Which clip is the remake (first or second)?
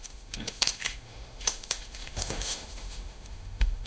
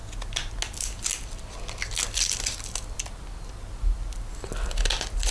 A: first